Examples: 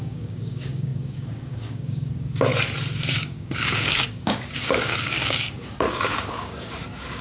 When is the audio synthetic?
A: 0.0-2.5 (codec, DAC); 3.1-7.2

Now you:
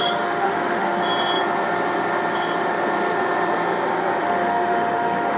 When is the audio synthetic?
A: 0.0-1.0 (autoencoder, DAC-VAE); 4.2-5.4

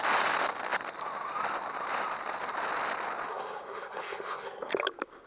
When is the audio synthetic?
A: 3.3-4.7 (codec, SNAC)